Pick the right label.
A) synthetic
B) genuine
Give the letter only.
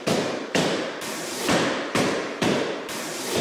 A